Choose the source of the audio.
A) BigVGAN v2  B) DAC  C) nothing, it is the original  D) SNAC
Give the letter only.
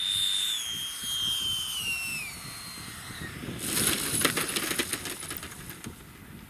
C